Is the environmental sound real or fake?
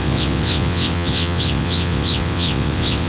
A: fake